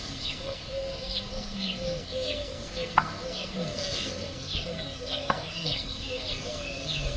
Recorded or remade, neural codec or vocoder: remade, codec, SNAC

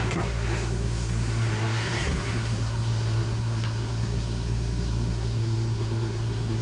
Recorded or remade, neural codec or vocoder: remade, codec, SNAC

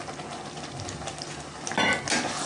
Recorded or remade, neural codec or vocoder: recorded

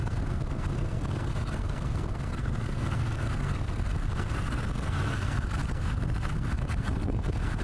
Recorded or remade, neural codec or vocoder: remade, codec, SNAC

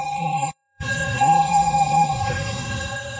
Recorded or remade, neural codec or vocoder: remade, codec, SNAC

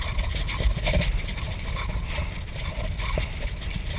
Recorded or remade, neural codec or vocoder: recorded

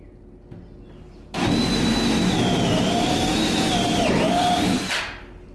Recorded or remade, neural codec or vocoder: recorded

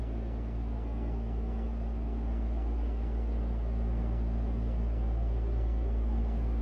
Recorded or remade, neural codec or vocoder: remade, codec, SNAC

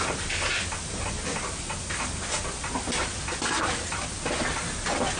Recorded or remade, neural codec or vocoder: recorded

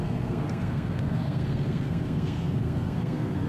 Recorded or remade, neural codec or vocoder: remade, codec, SNAC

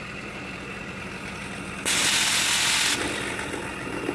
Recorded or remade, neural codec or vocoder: recorded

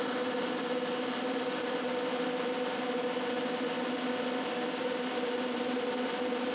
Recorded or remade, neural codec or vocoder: recorded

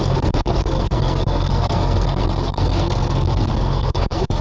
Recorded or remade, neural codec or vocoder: remade, codec, SNAC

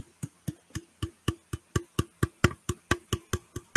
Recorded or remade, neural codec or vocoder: recorded